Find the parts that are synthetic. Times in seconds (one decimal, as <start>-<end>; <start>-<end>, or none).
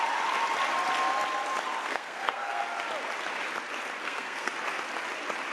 1.8-2.6; 4.0-4.5